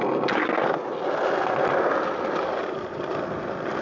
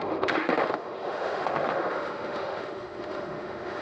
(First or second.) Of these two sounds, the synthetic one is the second